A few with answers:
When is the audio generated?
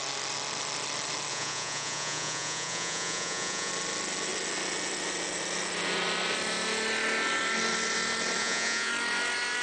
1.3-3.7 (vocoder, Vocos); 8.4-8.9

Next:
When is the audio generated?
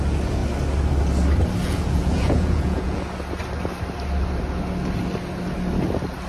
1.6-3.0 (vocoder, Vocos)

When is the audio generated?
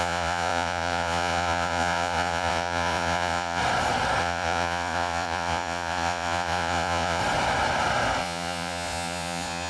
0.0-3.6 (vocoder, Vocos); 4.2-7.2; 8.2-9.7